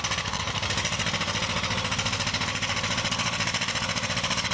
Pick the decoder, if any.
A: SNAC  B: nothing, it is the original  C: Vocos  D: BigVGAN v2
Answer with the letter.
B